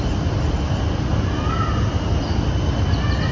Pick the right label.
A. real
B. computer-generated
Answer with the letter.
A